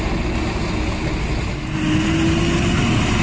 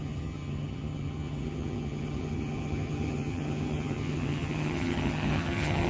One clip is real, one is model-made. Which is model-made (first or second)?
second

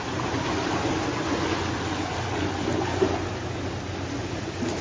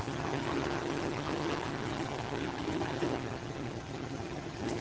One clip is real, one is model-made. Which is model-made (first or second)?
second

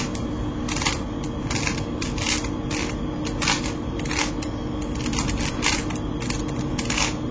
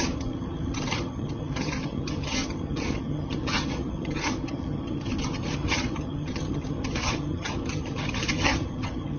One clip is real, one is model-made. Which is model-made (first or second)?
second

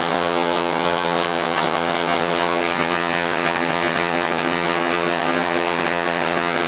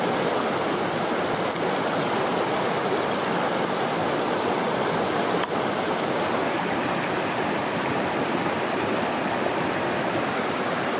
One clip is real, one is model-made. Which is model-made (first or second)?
first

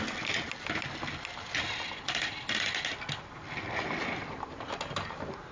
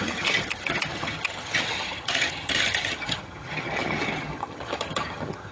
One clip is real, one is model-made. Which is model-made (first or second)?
second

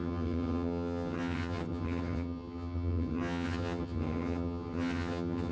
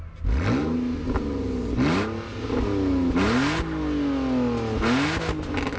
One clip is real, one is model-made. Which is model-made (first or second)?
first